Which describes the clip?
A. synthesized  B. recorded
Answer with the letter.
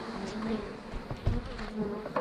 B